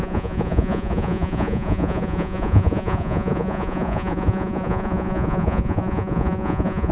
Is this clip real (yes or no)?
no